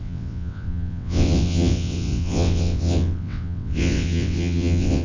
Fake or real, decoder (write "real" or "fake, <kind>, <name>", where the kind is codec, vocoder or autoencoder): fake, vocoder, WaveNeXt